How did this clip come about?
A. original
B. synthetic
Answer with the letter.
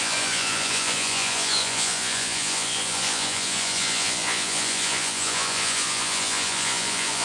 B